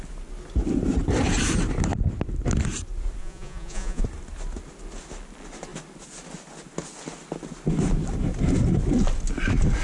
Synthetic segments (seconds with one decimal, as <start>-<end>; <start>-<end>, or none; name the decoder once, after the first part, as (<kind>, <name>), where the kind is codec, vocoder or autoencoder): 3.2-4.0 (vocoder, Vocos)